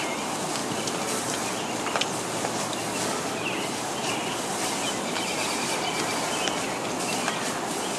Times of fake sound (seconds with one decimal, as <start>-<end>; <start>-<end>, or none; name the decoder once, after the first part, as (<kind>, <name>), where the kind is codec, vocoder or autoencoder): none